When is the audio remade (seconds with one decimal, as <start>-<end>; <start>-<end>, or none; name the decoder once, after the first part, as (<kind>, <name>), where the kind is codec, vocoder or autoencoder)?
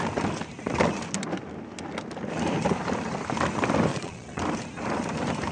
3.9-4.4 (vocoder, Vocos)